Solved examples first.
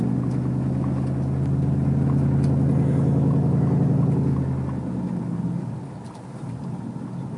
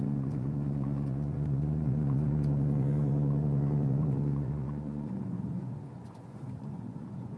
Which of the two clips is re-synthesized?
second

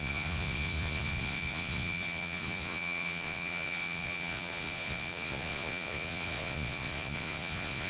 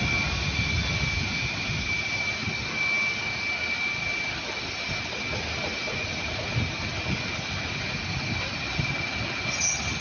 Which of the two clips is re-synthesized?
first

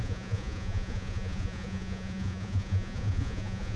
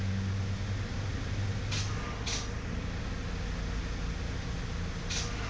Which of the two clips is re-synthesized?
first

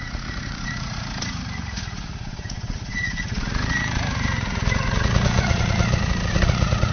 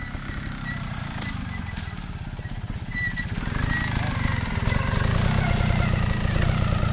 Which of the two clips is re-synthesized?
first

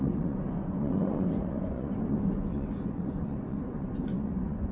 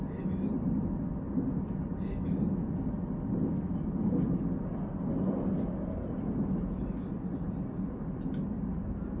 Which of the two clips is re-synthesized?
first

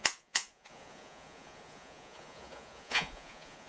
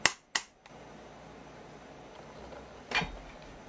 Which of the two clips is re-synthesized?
first